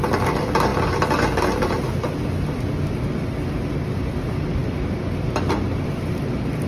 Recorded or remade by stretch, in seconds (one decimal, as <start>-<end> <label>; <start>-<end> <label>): 0.0-6.7 recorded